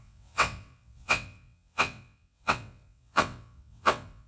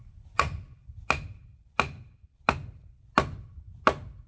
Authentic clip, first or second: second